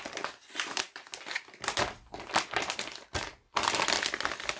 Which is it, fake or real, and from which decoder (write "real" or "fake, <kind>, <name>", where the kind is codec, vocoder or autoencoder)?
real